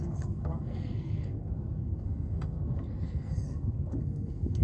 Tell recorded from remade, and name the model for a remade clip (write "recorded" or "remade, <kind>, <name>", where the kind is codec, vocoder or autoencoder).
remade, codec, SNAC